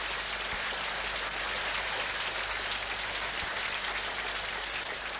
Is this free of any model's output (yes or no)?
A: yes